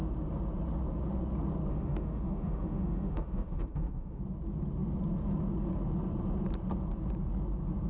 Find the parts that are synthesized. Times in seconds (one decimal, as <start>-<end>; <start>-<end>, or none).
1.7-4.2